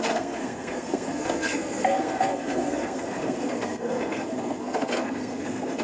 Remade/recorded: remade